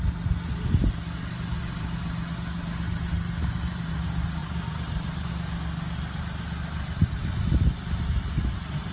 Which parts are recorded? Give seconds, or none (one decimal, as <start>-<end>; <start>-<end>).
0.0-3.4; 3.9-4.4; 5.3-8.9